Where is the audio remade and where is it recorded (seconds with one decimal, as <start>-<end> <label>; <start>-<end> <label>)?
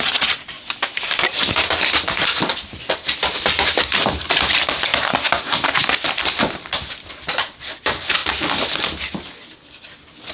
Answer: 0.0-4.9 remade; 4.9-6.0 recorded; 6.0-8.2 remade; 8.2-10.3 recorded